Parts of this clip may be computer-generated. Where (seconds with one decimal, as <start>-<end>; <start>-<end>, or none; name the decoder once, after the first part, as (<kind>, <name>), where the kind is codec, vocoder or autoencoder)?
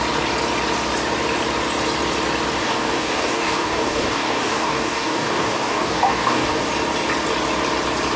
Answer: 2.6-6.7 (codec, DAC)